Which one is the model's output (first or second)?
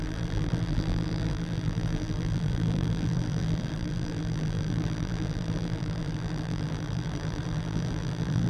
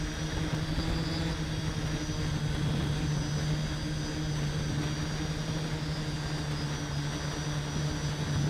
first